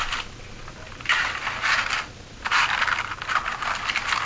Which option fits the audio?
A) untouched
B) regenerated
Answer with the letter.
A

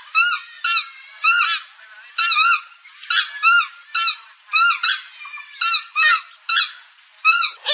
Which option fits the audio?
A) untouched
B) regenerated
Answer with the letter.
A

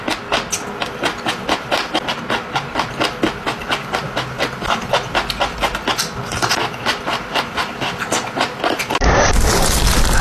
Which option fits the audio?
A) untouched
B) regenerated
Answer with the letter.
A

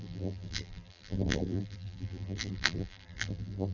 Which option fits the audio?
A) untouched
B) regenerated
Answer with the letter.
B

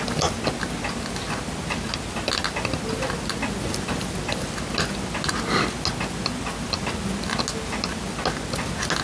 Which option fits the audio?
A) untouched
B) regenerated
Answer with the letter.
A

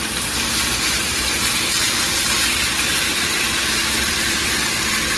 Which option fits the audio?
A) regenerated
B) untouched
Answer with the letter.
A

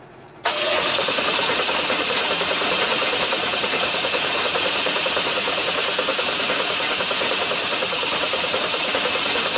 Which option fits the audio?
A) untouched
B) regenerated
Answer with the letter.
B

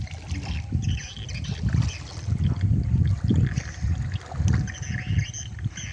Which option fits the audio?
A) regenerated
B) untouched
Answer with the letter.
B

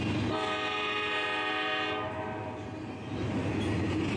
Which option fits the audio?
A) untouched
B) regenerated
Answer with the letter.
A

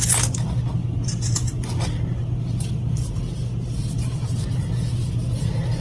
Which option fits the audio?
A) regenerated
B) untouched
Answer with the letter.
B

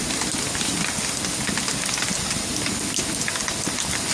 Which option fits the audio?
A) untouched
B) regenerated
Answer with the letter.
A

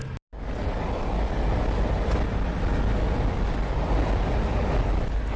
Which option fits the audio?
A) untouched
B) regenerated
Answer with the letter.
A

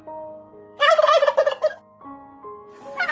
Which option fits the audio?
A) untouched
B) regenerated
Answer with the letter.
B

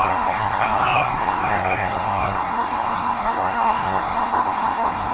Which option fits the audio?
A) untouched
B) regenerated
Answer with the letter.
B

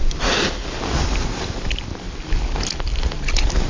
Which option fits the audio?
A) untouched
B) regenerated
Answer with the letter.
A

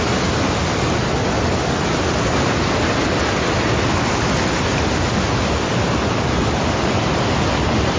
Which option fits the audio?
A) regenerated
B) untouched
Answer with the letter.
B